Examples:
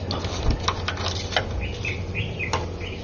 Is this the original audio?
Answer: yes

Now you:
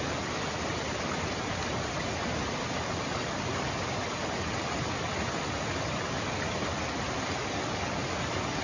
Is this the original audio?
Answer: yes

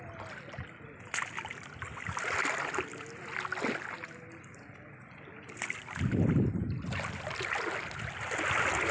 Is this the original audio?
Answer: yes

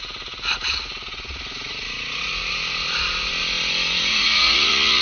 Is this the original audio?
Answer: no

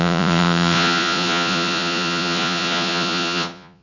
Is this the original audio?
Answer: no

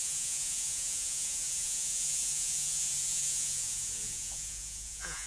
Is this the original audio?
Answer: no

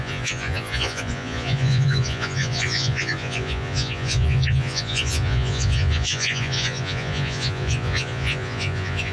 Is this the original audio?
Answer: no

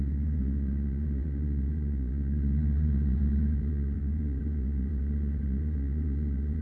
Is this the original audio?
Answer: no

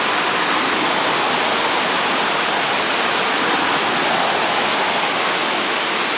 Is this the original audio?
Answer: yes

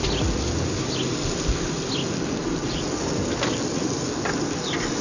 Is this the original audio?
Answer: yes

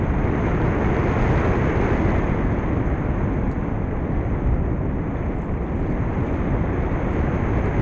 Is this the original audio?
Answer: yes